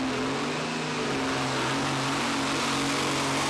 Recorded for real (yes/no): yes